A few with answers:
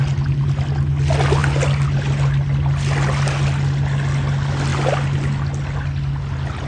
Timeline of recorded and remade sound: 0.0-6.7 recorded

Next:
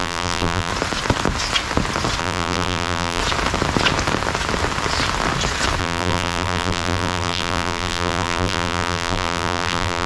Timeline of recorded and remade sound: 0.0-0.7 remade; 0.7-2.2 recorded; 2.2-3.2 remade; 3.2-5.8 recorded; 5.8-10.1 remade

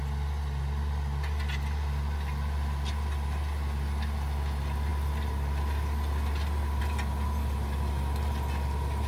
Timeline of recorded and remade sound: 0.0-9.1 recorded

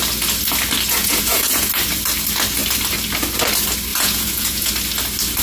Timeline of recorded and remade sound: 0.0-1.0 recorded; 1.0-1.7 remade; 1.7-3.9 recorded; 3.9-4.7 remade; 4.7-5.4 recorded